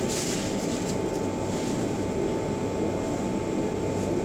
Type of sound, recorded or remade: recorded